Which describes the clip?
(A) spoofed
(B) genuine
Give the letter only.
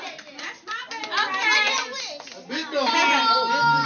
B